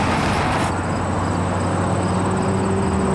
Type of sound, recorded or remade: recorded